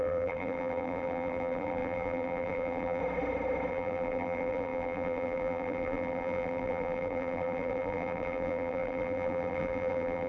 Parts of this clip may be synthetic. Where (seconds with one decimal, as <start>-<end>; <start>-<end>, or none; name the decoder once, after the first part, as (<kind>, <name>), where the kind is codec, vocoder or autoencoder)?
0.0-3.0 (vocoder, BigVGAN v2); 3.7-10.3